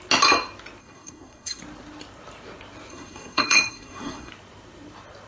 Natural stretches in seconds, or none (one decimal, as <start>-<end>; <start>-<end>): 0.0-0.8; 1.6-2.9; 4.3-5.3

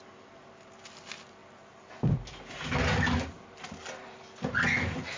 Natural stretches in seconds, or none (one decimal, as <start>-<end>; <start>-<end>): 0.0-5.2

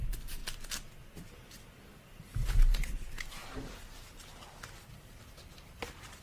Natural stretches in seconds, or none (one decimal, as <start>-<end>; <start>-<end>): none

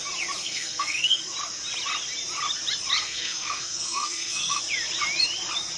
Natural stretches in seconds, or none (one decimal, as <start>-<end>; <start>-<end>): 0.0-0.4; 1.2-3.0; 4.6-5.8

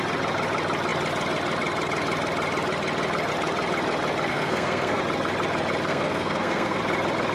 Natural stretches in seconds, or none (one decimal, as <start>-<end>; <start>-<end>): 0.0-4.3; 5.0-5.9; 6.8-7.3

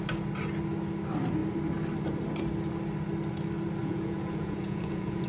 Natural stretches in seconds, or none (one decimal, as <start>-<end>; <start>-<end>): 0.0-3.8